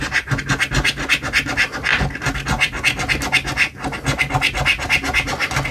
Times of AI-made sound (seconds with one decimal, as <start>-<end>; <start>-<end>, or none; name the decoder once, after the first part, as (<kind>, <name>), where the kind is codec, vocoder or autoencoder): none